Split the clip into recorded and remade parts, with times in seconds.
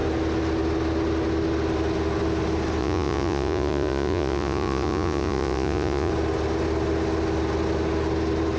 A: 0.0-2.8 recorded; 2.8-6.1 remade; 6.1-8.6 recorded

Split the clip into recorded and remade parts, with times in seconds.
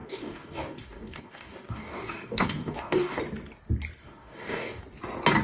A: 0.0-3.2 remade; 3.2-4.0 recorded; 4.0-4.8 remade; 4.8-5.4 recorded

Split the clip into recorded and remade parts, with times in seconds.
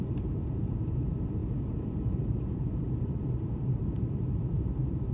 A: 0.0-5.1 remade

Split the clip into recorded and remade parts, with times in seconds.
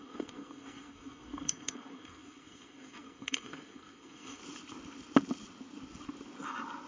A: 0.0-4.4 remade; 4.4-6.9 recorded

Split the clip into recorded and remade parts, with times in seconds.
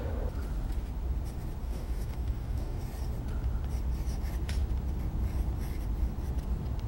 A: 0.0-1.6 recorded; 1.6-2.8 remade; 2.8-6.9 recorded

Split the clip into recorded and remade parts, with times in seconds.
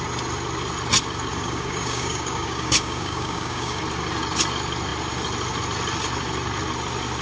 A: 0.0-1.3 recorded; 1.3-3.8 remade; 3.8-7.2 recorded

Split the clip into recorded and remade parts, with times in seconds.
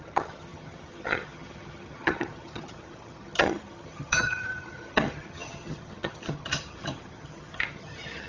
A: 0.0-8.3 remade